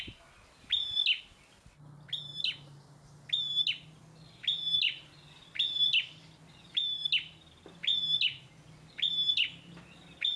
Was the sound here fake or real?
real